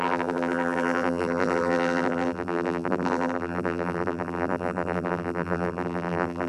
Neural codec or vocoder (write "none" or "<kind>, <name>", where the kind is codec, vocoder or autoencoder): vocoder, BigVGAN v2